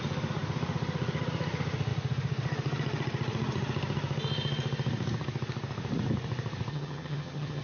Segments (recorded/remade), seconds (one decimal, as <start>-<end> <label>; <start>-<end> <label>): 0.0-6.7 recorded; 6.7-7.6 remade